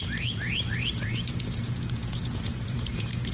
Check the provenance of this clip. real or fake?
fake